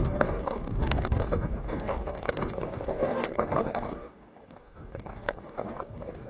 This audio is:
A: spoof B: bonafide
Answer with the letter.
A